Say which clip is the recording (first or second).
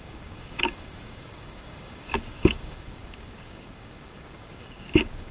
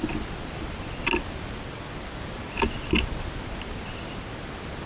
second